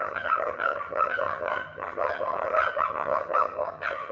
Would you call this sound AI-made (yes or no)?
yes